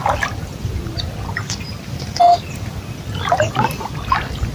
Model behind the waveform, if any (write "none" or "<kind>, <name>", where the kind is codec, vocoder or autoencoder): none